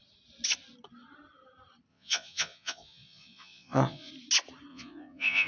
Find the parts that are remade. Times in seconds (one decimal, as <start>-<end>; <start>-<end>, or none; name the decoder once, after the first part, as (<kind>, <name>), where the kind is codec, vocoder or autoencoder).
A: 1.9-4.1 (vocoder, Vocos); 4.7-5.5